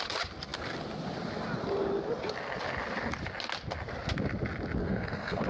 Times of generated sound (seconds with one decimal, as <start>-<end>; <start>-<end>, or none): 4.8-5.5